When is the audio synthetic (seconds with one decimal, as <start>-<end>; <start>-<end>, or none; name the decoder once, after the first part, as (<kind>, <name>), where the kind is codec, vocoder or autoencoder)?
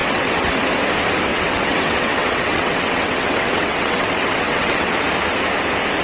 0.0-0.6 (vocoder, WaveNeXt); 1.3-4.9